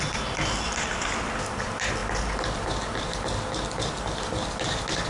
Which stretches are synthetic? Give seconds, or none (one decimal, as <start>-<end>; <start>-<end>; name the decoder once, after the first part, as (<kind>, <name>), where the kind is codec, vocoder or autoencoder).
none